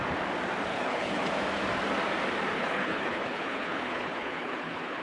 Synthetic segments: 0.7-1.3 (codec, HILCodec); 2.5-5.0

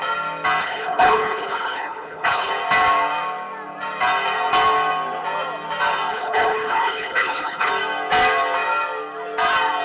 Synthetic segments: 0.6-2.5 (codec, HILCodec); 6.1-7.7